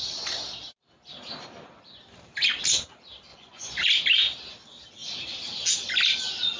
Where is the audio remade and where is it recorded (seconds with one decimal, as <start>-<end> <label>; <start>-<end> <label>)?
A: 0.0-3.3 recorded; 3.3-3.9 remade; 3.9-6.6 recorded